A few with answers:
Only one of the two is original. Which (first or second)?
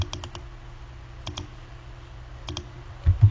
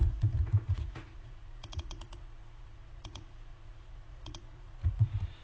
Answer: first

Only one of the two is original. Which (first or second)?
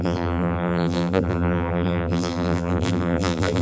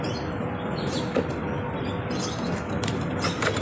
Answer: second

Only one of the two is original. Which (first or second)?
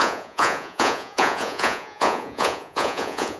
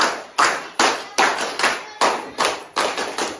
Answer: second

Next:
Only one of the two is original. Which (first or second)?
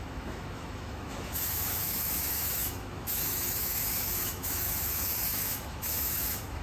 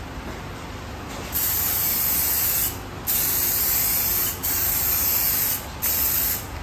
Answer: second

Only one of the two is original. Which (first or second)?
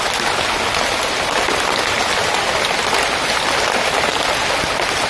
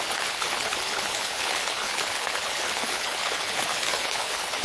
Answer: first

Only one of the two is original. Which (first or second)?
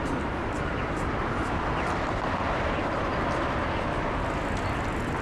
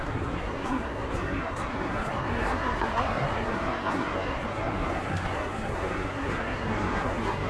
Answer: first